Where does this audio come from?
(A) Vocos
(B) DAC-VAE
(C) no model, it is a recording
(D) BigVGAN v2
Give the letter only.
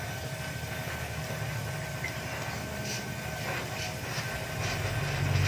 C